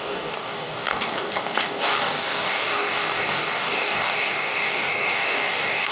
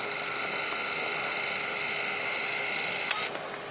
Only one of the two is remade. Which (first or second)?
first